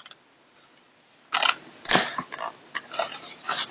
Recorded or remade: recorded